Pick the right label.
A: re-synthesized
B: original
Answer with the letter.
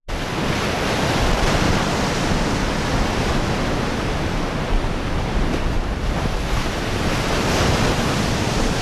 B